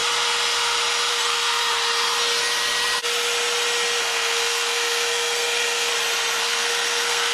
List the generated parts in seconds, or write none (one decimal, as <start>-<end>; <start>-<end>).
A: 1.1-1.6; 4.0-5.9; 6.4-7.3